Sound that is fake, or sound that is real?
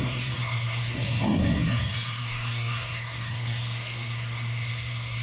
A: fake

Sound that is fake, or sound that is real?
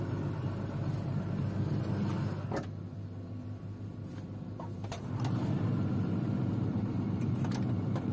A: real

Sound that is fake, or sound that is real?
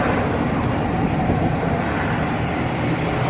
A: real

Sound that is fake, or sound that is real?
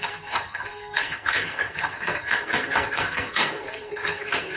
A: fake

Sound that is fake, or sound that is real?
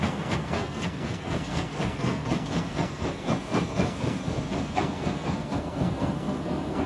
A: fake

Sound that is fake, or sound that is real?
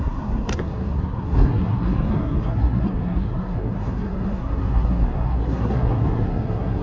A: fake